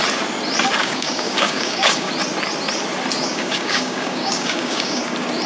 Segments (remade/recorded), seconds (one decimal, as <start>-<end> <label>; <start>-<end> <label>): 0.0-0.8 recorded; 0.8-2.1 remade; 2.1-3.3 recorded; 3.3-5.0 remade; 5.0-5.5 recorded